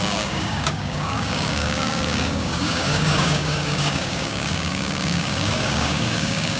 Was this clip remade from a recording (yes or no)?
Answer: yes